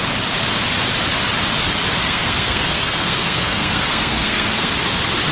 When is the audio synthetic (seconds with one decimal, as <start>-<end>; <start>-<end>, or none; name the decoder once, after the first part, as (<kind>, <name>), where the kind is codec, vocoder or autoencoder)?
2.0-4.7 (codec, SNAC)